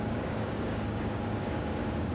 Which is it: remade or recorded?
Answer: remade